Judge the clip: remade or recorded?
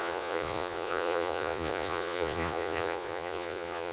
remade